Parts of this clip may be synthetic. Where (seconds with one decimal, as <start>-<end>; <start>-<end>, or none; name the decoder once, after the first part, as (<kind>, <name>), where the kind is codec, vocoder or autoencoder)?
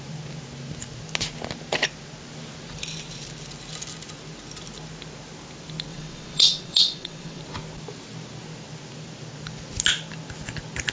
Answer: 5.9-7.4 (vocoder, WaveNeXt)